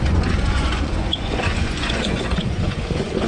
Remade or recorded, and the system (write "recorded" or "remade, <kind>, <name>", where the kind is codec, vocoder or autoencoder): remade, vocoder, Vocos